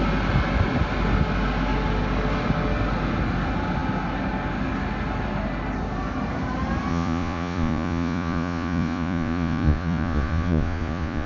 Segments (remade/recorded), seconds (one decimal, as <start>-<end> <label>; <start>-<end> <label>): 0.0-6.9 recorded; 6.9-11.3 remade